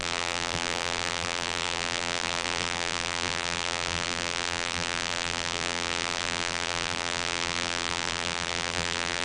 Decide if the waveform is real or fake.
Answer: fake